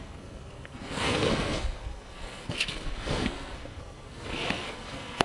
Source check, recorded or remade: remade